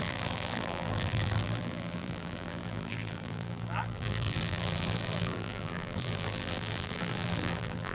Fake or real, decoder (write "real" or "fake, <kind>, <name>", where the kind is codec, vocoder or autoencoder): fake, vocoder, BigVGAN v2